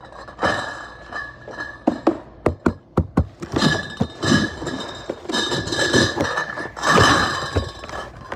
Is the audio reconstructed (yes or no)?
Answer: no